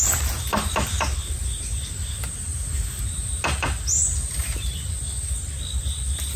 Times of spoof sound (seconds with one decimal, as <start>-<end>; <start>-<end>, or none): none